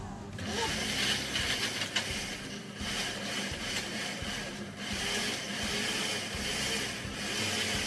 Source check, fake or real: real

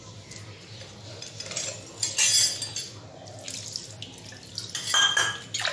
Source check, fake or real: real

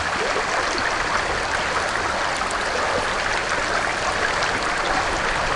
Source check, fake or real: real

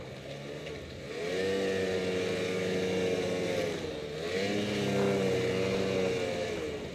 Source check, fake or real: real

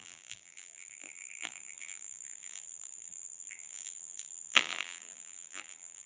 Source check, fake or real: fake